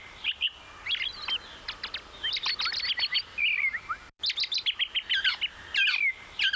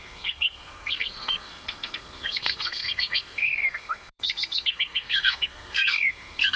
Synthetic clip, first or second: second